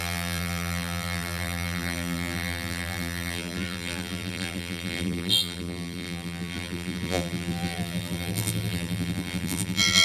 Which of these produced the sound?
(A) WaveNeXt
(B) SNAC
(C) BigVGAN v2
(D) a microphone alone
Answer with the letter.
C